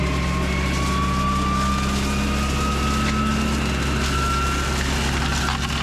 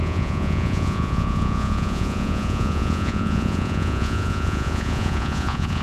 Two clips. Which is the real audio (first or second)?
first